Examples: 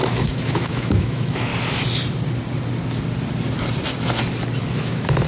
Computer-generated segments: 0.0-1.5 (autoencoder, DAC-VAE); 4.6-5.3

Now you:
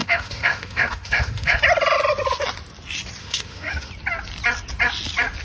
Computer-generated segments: 0.0-1.6 (autoencoder, DAC-VAE); 3.2-3.9

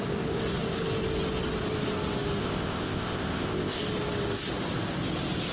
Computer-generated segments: 2.4-3.8 (codec, ZipCodec)

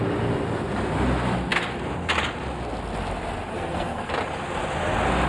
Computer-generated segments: 3.5-4.1 (codec, SNAC)

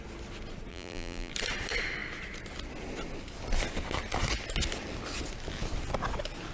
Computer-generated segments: 0.7-1.3 (vocoder, BigVGAN v2)

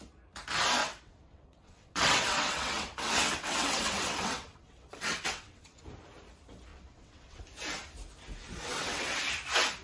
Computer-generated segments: 0.8-5.8 (vocoder, WaveNeXt); 6.7-7.4; 8.6-9.2